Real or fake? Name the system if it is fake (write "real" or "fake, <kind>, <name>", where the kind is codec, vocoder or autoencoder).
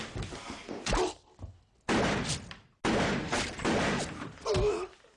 real